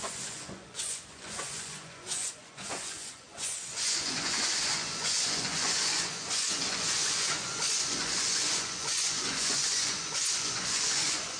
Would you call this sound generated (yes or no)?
yes